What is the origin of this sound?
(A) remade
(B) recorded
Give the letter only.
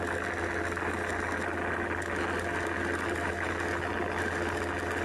B